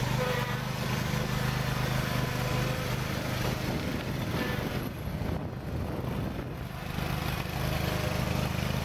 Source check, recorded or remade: recorded